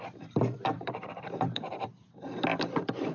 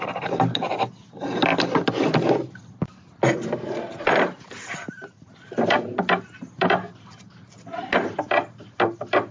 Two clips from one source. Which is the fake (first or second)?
first